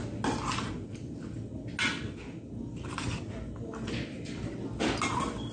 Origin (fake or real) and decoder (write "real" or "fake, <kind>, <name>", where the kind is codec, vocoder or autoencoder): real